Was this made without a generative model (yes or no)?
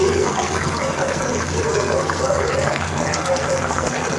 no